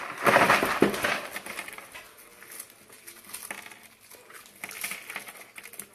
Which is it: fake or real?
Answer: real